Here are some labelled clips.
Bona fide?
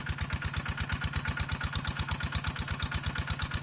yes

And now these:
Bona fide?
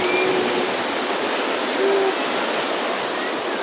yes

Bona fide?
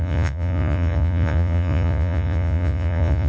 no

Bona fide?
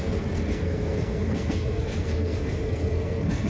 no